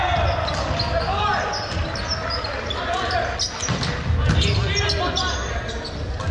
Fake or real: real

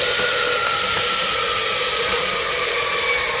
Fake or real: real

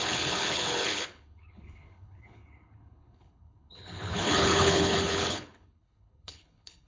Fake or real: fake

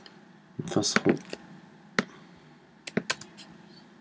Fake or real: real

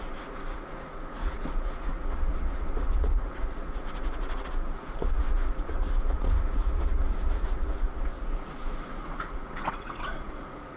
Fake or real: fake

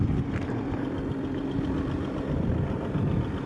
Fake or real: real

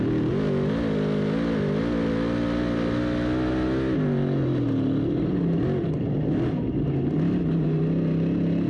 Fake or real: real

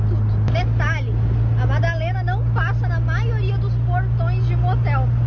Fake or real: real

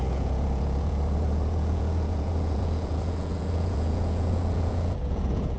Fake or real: fake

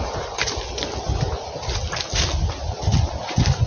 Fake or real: real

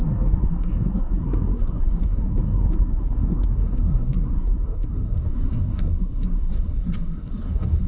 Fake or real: fake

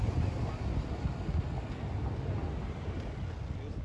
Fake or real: real